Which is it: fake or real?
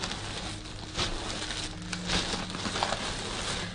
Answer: real